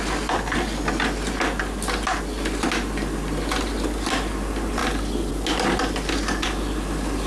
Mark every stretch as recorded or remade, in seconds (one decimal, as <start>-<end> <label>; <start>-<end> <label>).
0.0-7.3 recorded